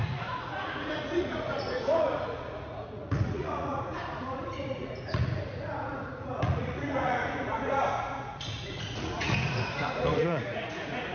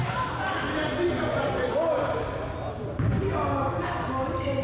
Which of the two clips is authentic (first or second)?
second